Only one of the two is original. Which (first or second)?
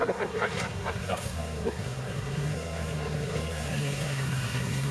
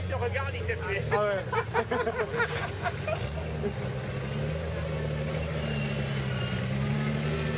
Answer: second